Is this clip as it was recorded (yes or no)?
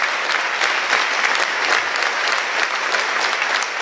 yes